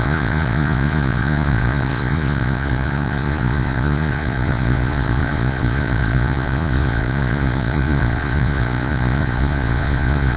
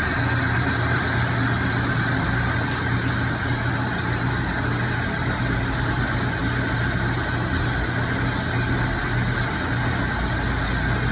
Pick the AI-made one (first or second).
first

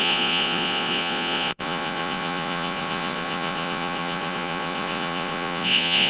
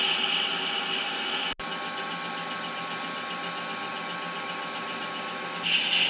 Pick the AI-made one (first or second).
first